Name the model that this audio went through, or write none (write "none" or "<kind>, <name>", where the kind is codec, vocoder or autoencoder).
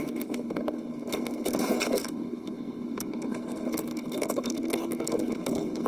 codec, SNAC